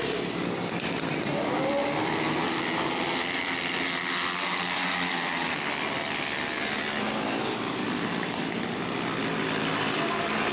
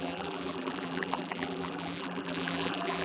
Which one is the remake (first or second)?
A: second